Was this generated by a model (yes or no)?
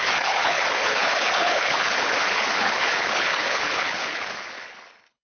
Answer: yes